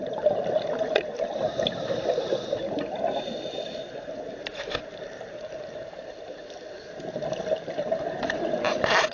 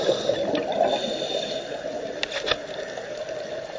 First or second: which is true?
second